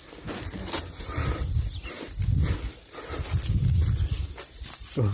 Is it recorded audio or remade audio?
recorded